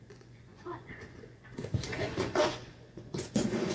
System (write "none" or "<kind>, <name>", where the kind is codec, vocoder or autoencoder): vocoder, Vocos